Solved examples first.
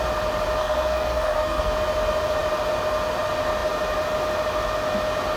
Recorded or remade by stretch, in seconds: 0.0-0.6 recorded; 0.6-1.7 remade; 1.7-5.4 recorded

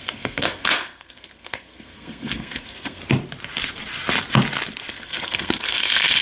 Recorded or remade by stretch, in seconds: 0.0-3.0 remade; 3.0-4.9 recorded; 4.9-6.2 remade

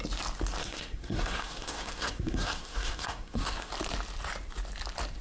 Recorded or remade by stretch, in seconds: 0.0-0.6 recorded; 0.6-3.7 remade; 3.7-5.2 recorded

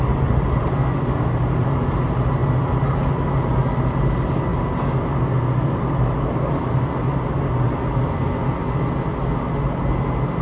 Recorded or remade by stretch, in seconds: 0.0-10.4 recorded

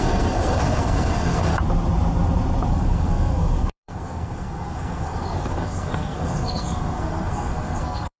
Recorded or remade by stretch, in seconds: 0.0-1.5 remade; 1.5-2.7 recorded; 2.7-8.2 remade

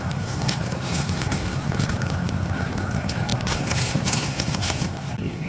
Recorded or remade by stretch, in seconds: 0.0-5.5 remade